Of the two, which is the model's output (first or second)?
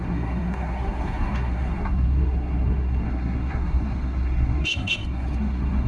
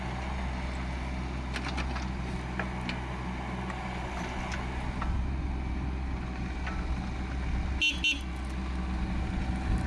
first